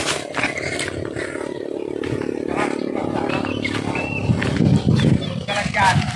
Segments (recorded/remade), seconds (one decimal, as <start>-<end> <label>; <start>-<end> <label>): 0.0-6.2 recorded